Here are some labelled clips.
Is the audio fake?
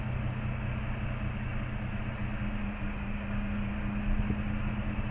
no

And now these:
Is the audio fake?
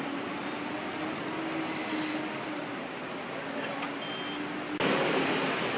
no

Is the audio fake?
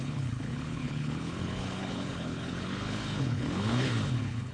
yes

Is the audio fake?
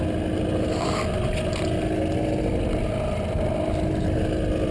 no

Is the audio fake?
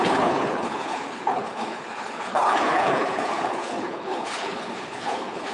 yes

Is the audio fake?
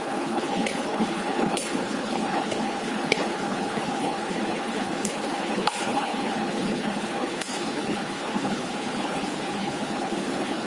yes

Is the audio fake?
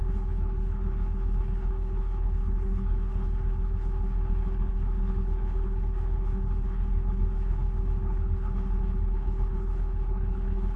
yes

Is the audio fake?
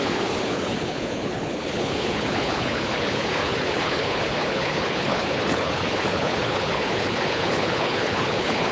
yes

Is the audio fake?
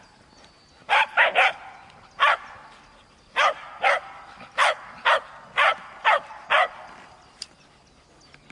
no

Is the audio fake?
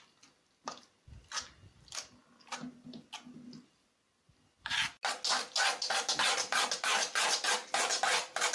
no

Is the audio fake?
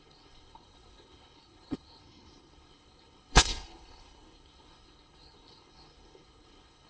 yes